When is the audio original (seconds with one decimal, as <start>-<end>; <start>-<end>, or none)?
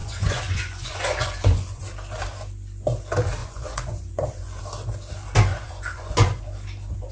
1.8-3.4; 4.6-5.5; 6.4-7.1